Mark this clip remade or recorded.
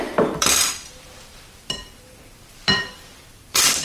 remade